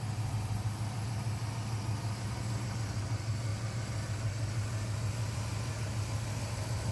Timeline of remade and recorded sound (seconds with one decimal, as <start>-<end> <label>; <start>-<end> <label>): 0.0-6.9 recorded